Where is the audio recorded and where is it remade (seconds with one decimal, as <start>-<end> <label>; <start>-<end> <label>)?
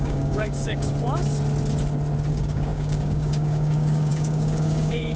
0.0-0.9 remade; 0.9-2.3 recorded; 2.3-5.2 remade